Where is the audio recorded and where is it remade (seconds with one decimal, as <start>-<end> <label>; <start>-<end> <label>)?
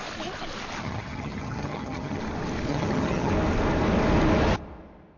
0.0-0.8 recorded; 0.8-2.2 remade; 2.2-2.7 recorded; 2.7-3.3 remade; 3.3-5.2 recorded